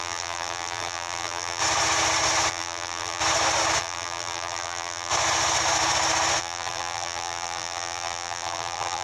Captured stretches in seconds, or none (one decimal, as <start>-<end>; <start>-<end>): 1.6-2.5; 3.2-3.8; 5.1-6.4